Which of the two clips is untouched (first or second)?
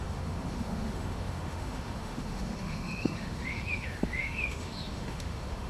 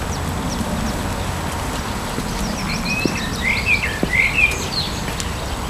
second